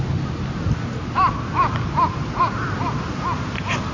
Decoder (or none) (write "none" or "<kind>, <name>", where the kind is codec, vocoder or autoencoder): none